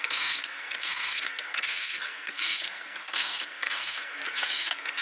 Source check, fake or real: fake